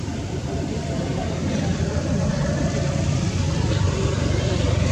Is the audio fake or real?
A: fake